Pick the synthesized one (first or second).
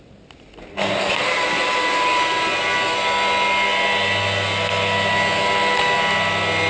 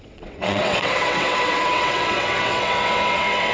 second